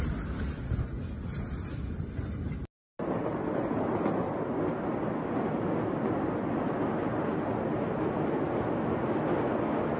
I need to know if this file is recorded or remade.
recorded